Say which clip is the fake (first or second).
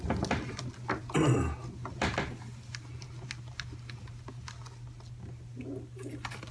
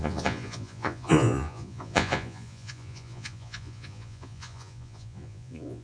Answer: second